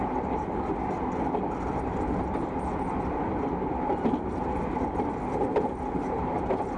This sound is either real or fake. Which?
real